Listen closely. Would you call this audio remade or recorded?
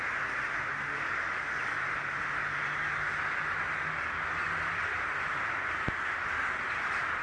recorded